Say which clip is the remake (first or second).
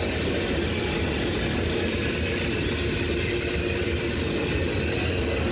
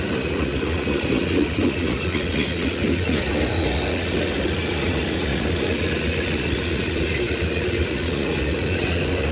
second